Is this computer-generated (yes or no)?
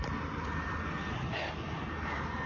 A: yes